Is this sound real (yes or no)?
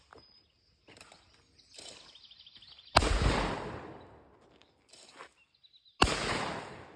yes